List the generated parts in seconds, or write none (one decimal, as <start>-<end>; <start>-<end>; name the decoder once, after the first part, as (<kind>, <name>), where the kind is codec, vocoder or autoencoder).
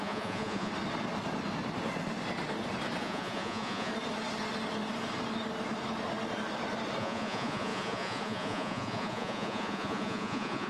0.0-0.7 (vocoder, Vocos); 3.0-3.9; 7.0-10.7